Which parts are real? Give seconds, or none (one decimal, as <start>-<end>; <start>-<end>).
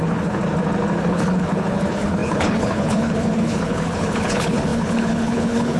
0.4-1.0